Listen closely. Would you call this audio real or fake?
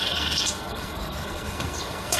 fake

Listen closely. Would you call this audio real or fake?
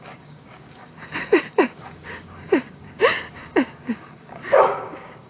fake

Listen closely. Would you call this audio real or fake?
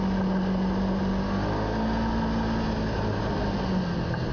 real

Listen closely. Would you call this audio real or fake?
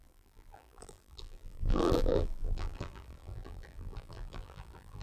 fake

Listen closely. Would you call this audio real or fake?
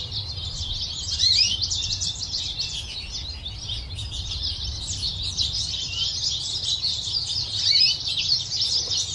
real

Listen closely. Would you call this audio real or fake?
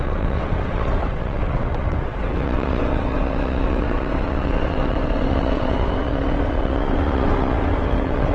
fake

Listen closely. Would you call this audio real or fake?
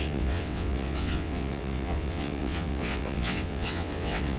fake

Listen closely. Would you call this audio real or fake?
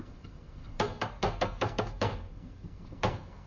fake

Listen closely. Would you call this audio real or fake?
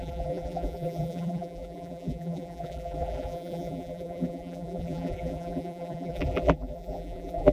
fake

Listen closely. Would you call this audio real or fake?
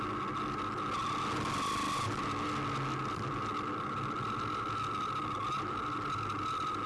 real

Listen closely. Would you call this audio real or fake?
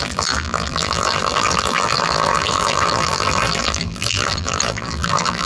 fake